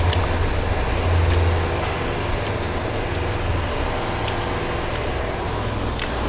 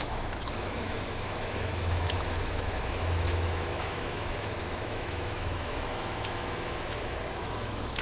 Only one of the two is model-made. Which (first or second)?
second